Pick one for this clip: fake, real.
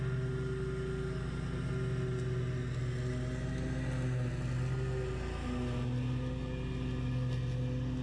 real